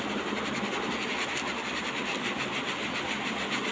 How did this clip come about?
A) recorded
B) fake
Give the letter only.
A